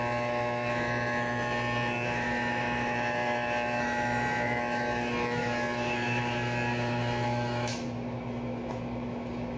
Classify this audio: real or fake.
fake